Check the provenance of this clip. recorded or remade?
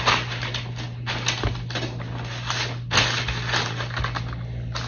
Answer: recorded